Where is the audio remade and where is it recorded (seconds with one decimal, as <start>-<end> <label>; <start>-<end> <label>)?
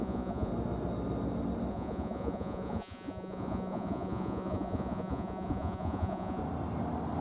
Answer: 0.0-0.5 remade; 0.5-1.7 recorded; 1.7-6.4 remade; 6.4-7.2 recorded